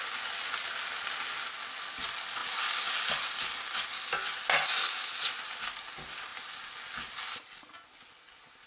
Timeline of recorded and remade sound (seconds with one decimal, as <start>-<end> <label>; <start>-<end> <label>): 0.0-8.7 recorded